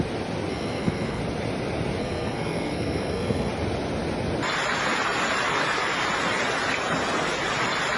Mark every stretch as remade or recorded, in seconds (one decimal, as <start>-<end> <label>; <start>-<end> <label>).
0.0-0.5 recorded; 0.5-1.2 remade; 1.2-2.0 recorded; 2.0-3.5 remade; 3.5-8.0 recorded